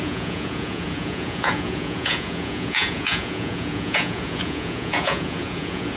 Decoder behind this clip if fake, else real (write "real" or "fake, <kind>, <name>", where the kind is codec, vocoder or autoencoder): fake, vocoder, Vocos